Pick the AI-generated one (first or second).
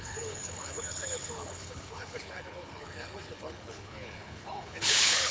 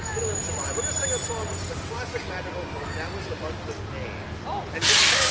first